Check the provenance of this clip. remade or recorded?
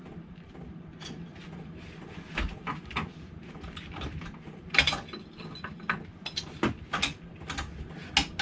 recorded